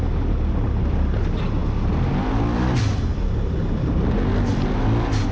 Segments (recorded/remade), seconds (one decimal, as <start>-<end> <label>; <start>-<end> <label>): 0.0-5.3 recorded